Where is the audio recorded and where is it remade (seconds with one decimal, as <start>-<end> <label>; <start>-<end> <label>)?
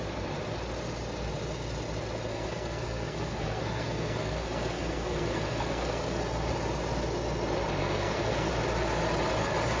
0.0-2.3 recorded; 2.3-6.2 remade; 6.2-7.8 recorded; 7.8-8.5 remade; 8.5-9.8 recorded